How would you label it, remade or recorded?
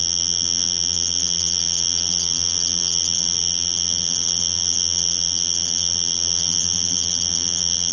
remade